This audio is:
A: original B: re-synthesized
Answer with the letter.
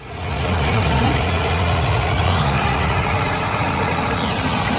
B